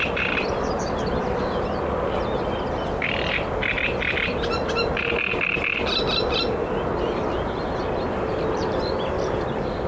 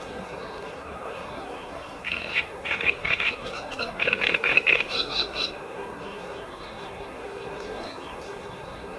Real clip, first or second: first